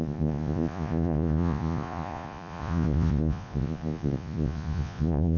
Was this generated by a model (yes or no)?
yes